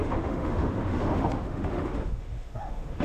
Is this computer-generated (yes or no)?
yes